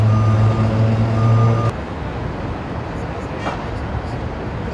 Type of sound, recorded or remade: recorded